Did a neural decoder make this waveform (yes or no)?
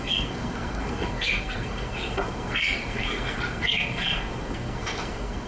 yes